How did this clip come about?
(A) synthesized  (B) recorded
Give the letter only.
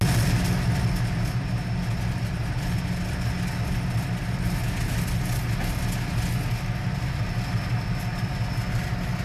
B